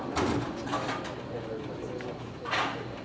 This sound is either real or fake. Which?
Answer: real